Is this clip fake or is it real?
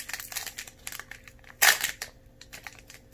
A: real